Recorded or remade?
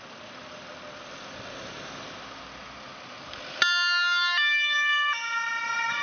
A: recorded